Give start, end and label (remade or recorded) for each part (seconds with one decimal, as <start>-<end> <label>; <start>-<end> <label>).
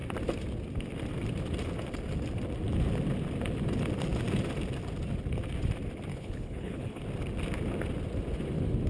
0.0-6.1 recorded; 6.1-7.0 remade; 7.0-8.9 recorded